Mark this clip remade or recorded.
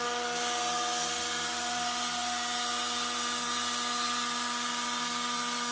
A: recorded